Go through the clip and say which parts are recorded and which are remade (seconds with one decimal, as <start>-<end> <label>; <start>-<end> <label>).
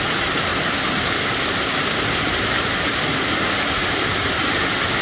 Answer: 0.0-5.0 recorded